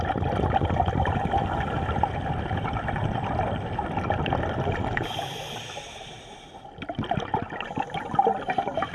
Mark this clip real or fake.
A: fake